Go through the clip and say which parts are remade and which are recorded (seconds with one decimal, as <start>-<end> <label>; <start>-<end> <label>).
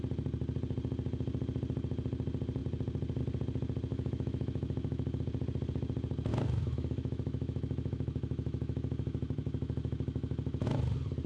0.0-3.9 recorded; 3.9-5.2 remade; 5.2-6.3 recorded; 6.3-10.8 remade; 10.8-11.3 recorded